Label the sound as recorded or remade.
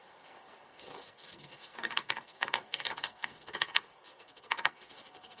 remade